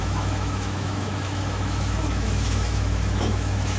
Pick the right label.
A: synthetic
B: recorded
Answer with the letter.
A